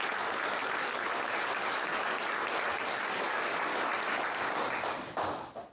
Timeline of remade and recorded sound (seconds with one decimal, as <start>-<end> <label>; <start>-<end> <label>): 0.0-0.6 recorded; 0.6-2.2 remade; 2.2-2.7 recorded; 2.7-3.9 remade; 3.9-5.7 recorded